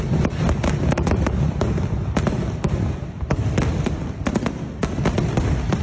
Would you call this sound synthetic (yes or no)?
no